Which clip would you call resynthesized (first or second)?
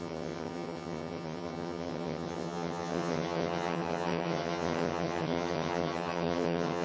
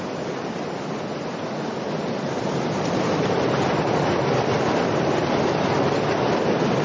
first